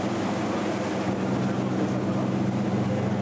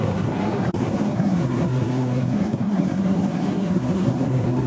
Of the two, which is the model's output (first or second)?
second